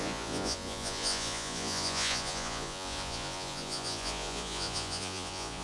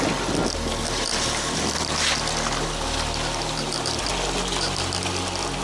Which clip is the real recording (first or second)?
second